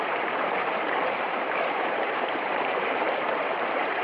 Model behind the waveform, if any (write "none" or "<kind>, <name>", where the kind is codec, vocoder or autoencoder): vocoder, BigVGAN v2